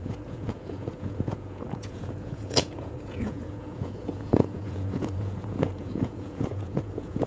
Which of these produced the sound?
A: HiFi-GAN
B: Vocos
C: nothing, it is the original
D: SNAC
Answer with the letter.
B